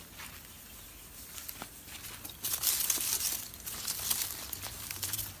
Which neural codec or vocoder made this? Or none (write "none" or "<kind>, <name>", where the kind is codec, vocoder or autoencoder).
none